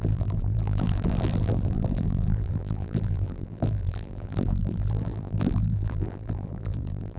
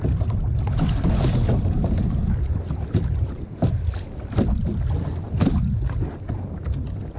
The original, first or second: second